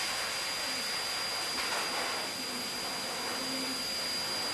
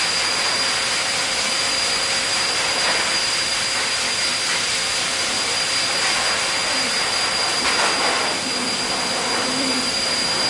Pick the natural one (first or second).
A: first